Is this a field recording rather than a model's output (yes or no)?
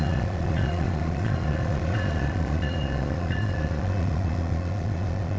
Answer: no